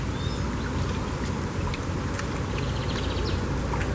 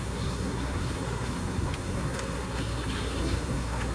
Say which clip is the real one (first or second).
first